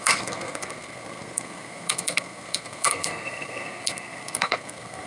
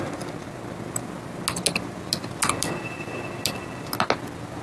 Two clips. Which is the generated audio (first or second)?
first